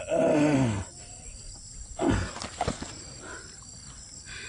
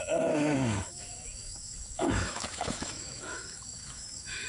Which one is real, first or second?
first